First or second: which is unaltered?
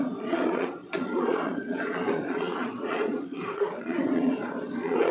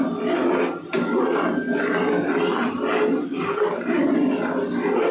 second